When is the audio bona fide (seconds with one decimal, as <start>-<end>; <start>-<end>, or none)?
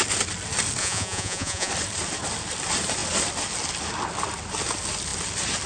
0.0-0.8; 1.7-5.7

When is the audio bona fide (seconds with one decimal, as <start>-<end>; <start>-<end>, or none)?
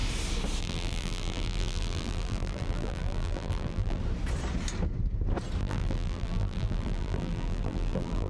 0.0-0.6; 4.0-5.6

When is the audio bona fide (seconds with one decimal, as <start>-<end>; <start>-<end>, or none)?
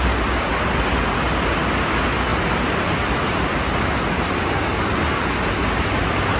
0.0-6.4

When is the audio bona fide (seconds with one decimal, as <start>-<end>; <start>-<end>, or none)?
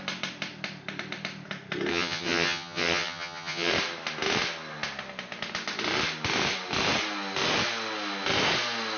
0.0-1.9; 3.7-9.0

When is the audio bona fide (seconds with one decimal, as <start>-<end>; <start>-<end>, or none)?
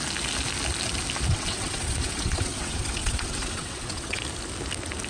0.0-1.3; 4.2-5.1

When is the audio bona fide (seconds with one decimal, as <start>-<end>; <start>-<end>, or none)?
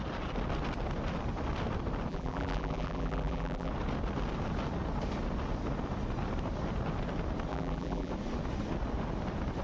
0.0-2.1; 3.7-7.5; 8.1-9.6